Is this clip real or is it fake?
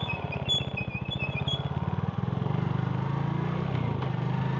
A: real